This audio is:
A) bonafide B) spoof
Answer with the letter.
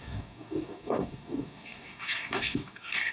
B